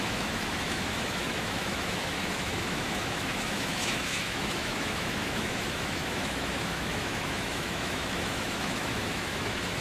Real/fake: fake